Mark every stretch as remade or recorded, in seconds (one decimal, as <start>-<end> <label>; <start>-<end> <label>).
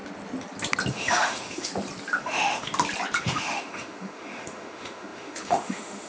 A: 0.0-0.9 recorded; 0.9-1.7 remade; 1.7-2.2 recorded; 2.2-2.7 remade; 2.7-3.2 recorded; 3.2-6.1 remade